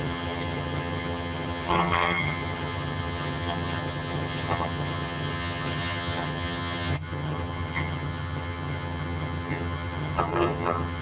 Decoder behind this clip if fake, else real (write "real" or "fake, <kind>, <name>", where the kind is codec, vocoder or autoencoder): fake, vocoder, HiFi-GAN